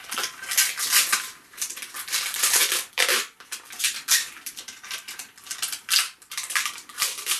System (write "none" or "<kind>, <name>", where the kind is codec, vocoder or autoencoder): vocoder, BigVGAN v2